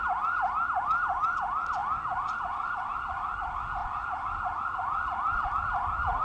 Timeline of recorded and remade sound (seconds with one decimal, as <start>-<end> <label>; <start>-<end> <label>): 0.0-3.8 recorded; 3.8-5.5 remade; 5.5-6.2 recorded

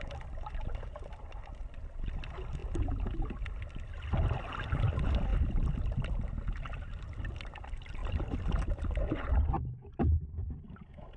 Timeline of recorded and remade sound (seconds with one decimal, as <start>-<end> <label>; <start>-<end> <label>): 0.0-5.3 recorded; 5.3-6.3 remade; 6.3-8.0 recorded; 8.0-9.3 remade; 9.3-11.2 recorded

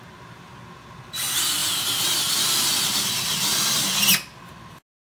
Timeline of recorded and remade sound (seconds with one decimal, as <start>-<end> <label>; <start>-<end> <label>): 0.0-5.2 recorded

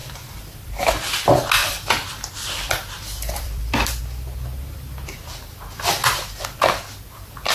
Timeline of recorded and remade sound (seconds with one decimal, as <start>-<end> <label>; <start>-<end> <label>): 0.0-0.7 remade; 0.7-1.6 recorded; 1.6-4.0 remade; 4.0-7.5 recorded

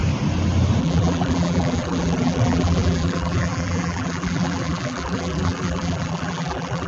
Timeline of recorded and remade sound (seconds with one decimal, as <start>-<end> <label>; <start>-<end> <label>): 0.0-0.8 recorded; 0.8-6.9 remade

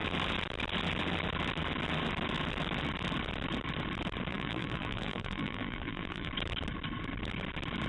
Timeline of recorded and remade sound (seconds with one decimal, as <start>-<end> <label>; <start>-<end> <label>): 0.0-4.3 recorded; 4.3-6.3 remade; 6.3-7.9 recorded

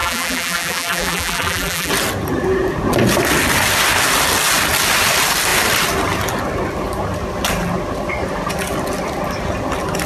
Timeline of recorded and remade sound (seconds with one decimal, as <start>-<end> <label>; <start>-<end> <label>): 0.0-1.9 remade; 1.9-10.1 recorded